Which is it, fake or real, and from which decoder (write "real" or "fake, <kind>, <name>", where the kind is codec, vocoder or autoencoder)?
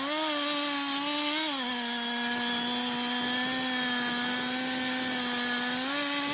real